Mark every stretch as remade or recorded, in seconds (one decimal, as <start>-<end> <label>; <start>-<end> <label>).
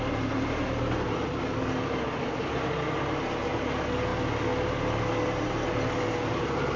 0.0-6.8 recorded